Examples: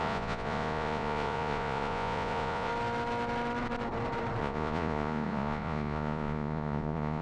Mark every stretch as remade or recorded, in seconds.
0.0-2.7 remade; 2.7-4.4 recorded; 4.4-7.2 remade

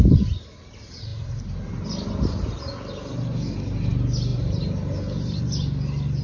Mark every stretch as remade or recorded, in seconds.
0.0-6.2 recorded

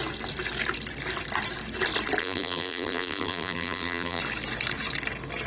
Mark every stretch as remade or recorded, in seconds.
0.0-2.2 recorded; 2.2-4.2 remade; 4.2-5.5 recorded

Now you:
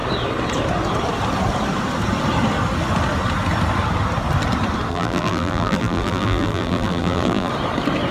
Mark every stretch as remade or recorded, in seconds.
0.0-4.9 recorded; 4.9-7.5 remade; 7.5-8.1 recorded

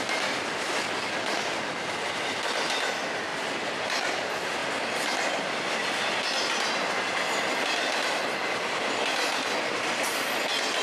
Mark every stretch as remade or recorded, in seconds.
0.0-10.8 recorded

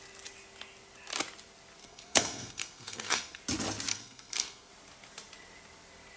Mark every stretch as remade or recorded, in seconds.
0.0-1.8 recorded; 1.8-3.4 remade; 3.4-3.9 recorded; 3.9-4.7 remade; 4.7-6.2 recorded

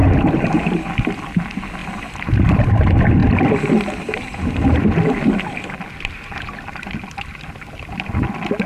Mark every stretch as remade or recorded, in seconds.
0.0-0.9 remade; 0.9-1.8 recorded; 1.8-2.6 remade; 2.6-8.7 recorded